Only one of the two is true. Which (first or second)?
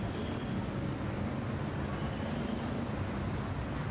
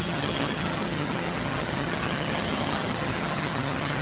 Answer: first